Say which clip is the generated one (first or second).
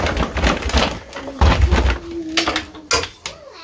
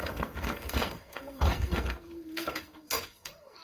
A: second